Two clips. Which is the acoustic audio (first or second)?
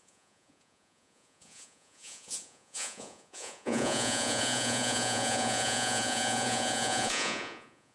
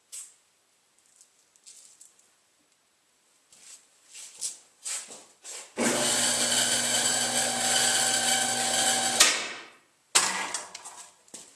second